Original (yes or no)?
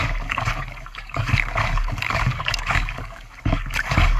no